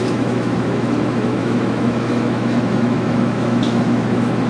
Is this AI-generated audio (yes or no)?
yes